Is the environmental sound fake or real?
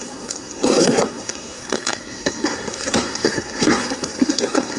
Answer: fake